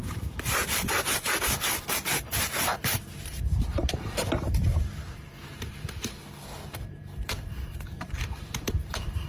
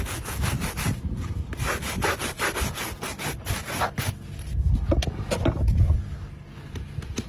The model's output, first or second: first